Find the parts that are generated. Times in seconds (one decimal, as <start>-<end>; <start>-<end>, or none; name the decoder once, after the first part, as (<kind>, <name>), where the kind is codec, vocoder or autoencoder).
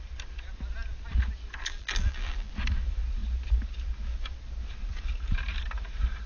1.6-2.5 (vocoder, BigVGAN v2)